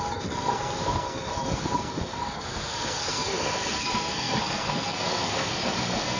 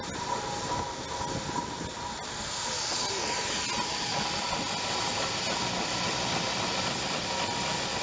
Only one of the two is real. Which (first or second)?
second